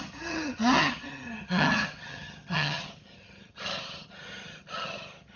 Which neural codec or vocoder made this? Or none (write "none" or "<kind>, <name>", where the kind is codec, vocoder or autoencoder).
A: vocoder, HiFi-GAN